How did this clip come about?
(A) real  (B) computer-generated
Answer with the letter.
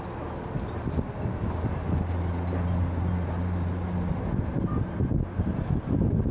A